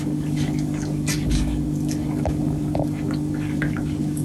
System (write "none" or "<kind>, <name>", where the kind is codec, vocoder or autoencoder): codec, DAC